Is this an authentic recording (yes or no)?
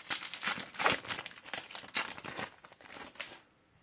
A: yes